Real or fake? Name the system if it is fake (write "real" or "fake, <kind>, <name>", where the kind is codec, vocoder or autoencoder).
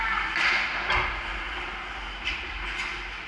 real